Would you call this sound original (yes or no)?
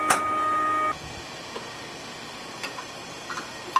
yes